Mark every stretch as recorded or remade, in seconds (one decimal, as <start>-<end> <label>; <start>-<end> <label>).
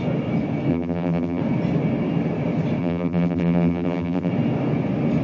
0.0-0.7 recorded; 0.7-1.4 remade; 1.4-2.8 recorded; 2.8-4.3 remade; 4.3-5.2 recorded